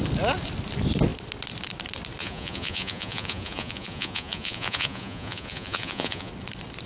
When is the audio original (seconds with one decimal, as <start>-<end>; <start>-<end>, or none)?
0.0-2.2; 6.3-6.9

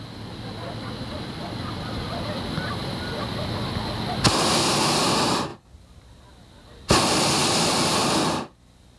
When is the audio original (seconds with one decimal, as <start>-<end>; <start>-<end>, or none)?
0.0-9.0